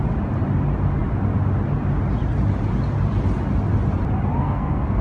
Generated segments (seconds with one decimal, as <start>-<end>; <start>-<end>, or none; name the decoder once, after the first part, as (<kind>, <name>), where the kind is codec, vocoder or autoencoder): 4.4-5.0 (codec, SNAC)